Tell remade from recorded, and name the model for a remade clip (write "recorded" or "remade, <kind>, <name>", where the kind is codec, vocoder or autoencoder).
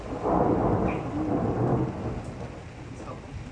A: recorded